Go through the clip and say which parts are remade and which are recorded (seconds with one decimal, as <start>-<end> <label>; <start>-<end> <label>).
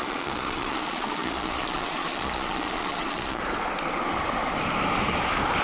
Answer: 0.0-3.4 remade; 3.4-5.6 recorded